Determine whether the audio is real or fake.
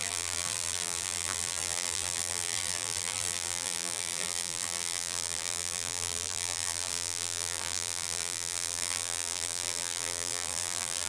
fake